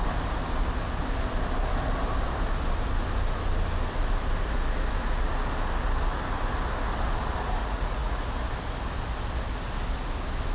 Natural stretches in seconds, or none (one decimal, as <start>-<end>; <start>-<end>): 0.0-7.6; 8.3-10.5